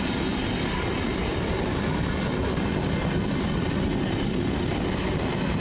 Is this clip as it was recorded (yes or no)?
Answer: yes